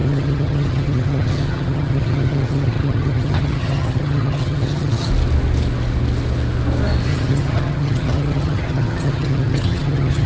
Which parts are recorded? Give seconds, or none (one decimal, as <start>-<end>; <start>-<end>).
5.1-7.1